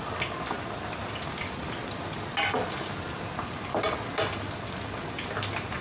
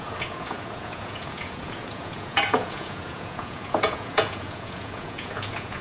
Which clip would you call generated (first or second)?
second